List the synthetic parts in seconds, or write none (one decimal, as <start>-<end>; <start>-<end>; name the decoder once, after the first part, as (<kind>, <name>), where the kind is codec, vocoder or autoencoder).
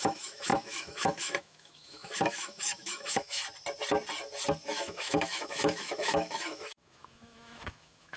0.0-3.4 (autoencoder, DAC-VAE); 4.7-8.2